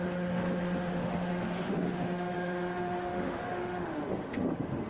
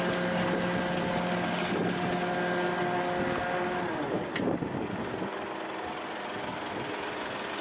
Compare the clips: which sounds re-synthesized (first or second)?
first